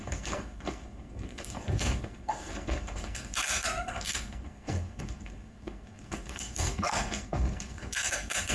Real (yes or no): no